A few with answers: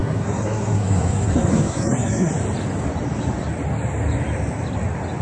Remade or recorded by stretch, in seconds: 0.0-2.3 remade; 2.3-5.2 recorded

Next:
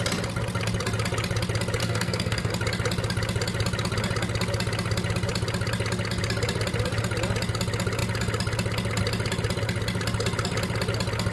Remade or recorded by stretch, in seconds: 0.0-1.8 recorded; 1.8-2.5 remade; 2.5-11.3 recorded

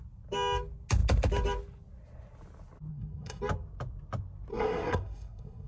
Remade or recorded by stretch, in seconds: 0.0-2.9 recorded; 2.9-3.4 remade; 3.4-4.5 recorded; 4.5-5.7 remade

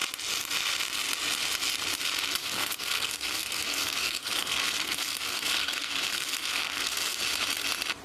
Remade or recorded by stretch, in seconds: 0.0-2.4 recorded; 2.4-7.2 remade; 7.2-8.0 recorded

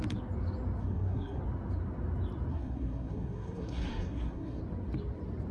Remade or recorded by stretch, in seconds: 0.0-0.8 recorded; 0.8-1.4 remade; 1.4-2.5 recorded; 2.5-4.6 remade; 4.6-5.5 recorded

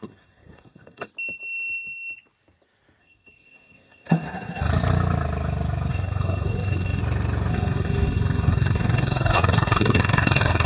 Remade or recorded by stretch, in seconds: 0.0-1.1 remade; 1.1-3.0 recorded; 3.0-4.7 remade; 4.7-5.9 recorded; 5.9-7.0 remade; 7.0-7.5 recorded; 7.5-10.7 remade

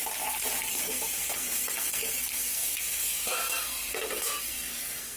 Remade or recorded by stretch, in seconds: 0.0-0.7 recorded; 0.7-5.2 remade